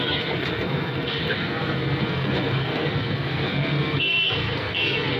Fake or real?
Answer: fake